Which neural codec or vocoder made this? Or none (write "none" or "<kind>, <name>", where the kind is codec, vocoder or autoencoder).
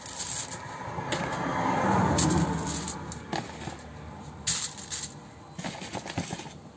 none